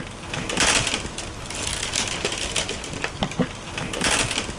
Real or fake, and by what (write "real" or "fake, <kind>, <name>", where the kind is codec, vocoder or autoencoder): real